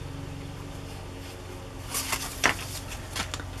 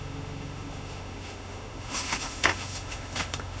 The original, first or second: first